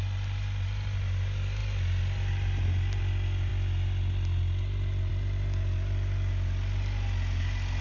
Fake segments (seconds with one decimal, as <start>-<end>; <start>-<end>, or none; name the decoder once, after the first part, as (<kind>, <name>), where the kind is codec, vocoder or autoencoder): none